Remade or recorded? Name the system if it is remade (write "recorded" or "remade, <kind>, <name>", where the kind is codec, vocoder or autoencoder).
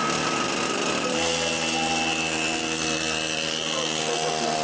recorded